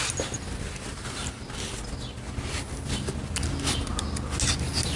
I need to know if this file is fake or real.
real